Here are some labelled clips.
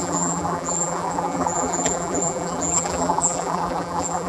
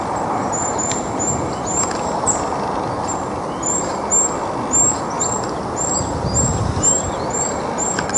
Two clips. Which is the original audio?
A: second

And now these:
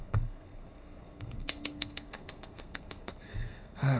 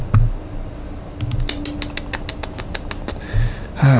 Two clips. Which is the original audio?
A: second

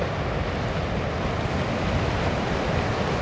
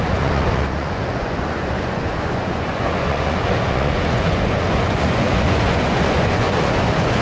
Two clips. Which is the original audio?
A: first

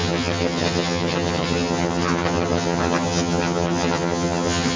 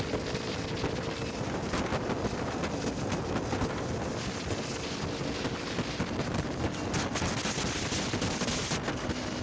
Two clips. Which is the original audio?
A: second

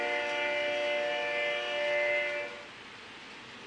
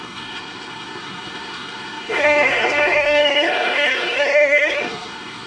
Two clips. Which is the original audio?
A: first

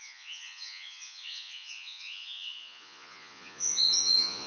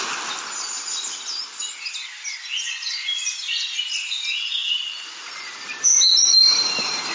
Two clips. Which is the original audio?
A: second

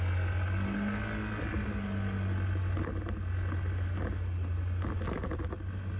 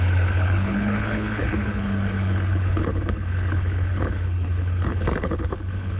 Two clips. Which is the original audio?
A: first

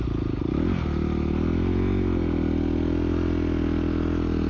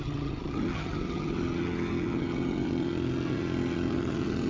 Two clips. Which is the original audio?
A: first